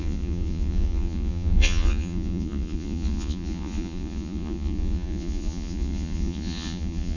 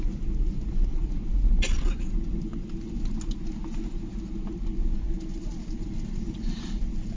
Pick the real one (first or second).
second